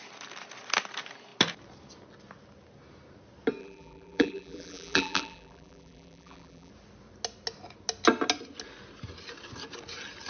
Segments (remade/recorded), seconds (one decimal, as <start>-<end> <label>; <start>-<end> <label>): 0.0-3.6 recorded; 3.6-6.7 remade; 6.7-10.3 recorded